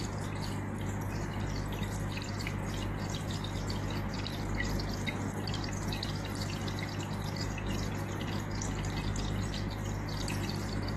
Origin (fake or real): real